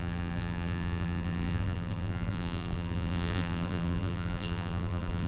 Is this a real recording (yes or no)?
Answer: no